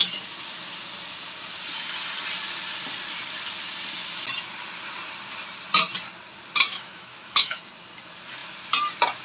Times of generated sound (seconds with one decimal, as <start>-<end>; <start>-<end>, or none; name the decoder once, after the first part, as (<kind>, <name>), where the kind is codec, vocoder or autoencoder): 6.7-7.6 (autoencoder, DAC-VAE)